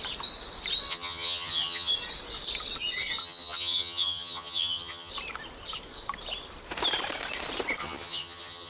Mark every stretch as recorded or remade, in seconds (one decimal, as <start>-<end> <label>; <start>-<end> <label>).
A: 0.0-0.9 recorded; 0.9-1.9 remade; 1.9-3.2 recorded; 3.2-5.1 remade; 5.1-7.8 recorded; 7.8-8.7 remade